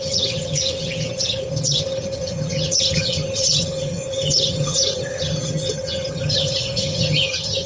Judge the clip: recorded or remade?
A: remade